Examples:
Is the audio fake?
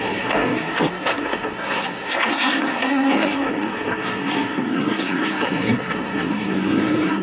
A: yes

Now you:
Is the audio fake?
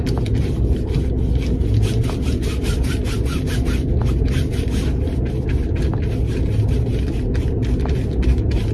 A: no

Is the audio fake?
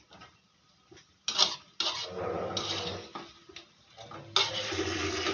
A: no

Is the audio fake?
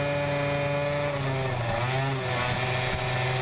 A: no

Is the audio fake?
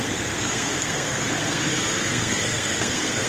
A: yes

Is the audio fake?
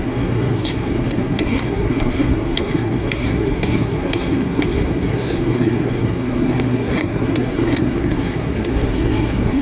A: yes